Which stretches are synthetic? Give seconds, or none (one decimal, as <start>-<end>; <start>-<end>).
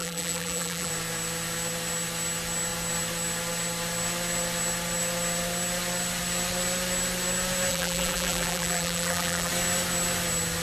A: 0.0-0.9; 7.7-9.5